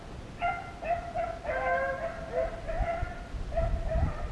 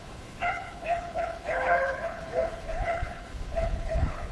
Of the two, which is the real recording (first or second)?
first